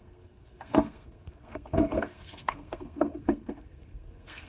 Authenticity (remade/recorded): remade